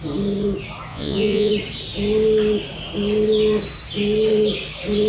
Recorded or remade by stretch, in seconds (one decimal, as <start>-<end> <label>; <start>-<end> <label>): 0.0-0.9 recorded; 0.9-1.5 remade; 1.5-5.1 recorded